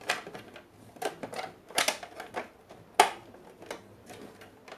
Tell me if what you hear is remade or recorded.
recorded